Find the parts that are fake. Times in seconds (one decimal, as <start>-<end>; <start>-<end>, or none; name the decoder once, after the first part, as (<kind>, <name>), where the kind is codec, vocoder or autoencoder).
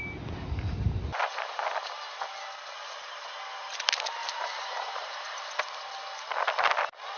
4.2-5.6 (vocoder, BigVGAN v2)